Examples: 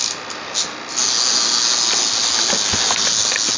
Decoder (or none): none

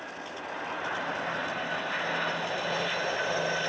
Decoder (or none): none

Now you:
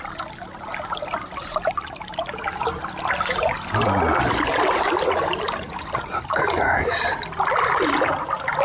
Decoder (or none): none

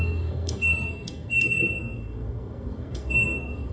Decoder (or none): codec, SNAC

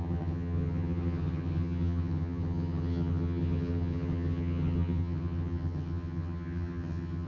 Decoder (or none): vocoder, HiFi-GAN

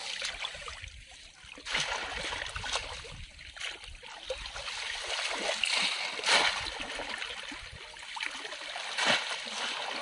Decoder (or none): none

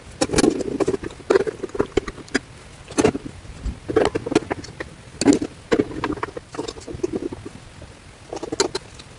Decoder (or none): none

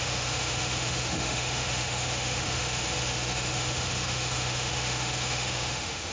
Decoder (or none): autoencoder, DAC-VAE